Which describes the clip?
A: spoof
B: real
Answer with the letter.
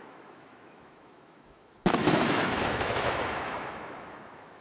A